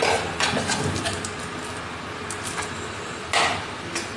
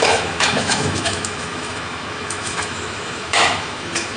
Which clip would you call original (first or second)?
first